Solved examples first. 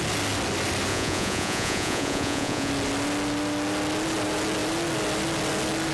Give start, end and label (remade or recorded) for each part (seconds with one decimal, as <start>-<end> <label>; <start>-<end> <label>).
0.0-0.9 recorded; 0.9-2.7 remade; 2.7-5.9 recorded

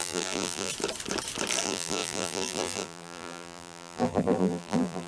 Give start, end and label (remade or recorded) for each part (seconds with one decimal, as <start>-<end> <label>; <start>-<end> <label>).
0.0-0.7 remade; 0.7-1.6 recorded; 1.6-5.1 remade

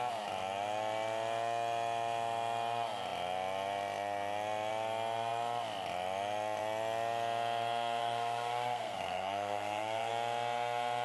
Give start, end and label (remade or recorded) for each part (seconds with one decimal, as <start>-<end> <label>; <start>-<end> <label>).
0.0-8.0 recorded; 8.0-10.1 remade; 10.1-11.0 recorded